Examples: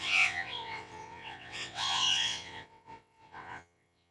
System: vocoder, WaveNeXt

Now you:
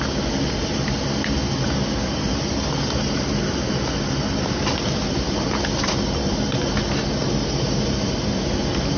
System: none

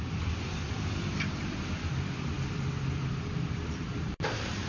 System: vocoder, BigVGAN v2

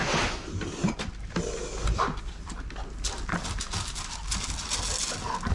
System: none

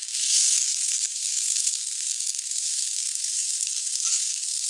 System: codec, SNAC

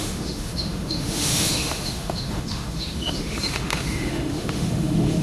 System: autoencoder, DAC-VAE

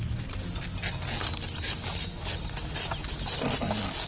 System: none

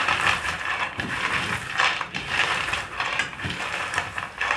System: vocoder, BigVGAN v2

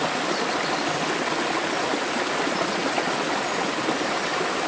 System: none